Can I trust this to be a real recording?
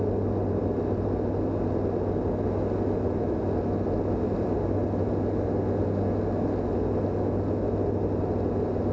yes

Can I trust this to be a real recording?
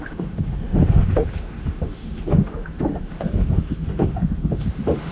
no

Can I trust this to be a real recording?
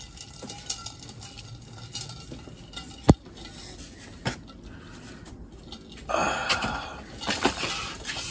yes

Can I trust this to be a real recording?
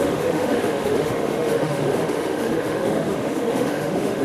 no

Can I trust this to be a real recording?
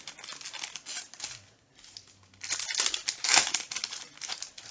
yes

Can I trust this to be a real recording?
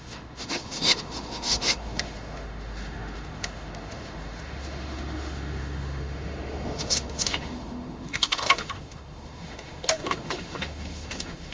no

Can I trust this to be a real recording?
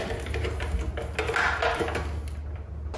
yes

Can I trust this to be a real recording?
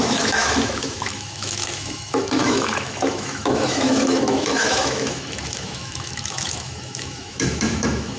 no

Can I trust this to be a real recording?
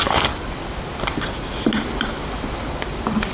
yes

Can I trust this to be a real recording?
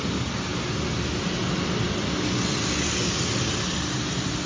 yes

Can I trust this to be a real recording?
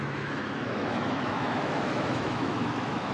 no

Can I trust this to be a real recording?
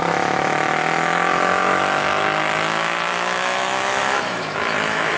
no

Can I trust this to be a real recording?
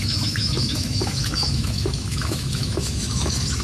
no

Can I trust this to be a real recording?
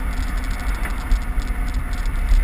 yes